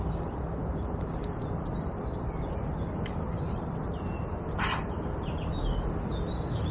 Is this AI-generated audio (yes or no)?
no